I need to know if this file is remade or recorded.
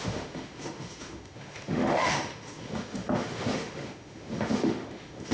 remade